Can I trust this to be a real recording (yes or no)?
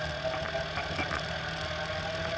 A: yes